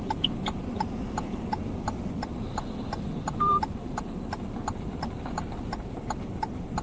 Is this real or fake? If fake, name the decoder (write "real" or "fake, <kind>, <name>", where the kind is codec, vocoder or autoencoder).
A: fake, vocoder, BigVGAN v2